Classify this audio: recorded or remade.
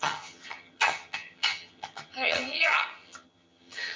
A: remade